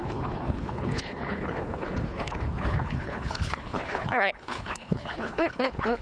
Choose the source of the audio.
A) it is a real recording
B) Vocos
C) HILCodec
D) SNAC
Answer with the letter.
C